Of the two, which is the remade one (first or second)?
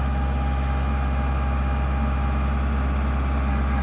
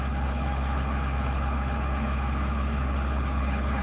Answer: second